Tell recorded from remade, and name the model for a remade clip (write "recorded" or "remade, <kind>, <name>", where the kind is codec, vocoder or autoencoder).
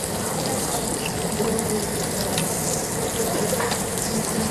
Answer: remade, vocoder, BigVGAN v2